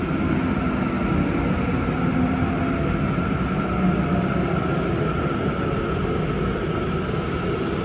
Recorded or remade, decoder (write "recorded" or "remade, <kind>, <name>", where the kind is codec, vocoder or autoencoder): recorded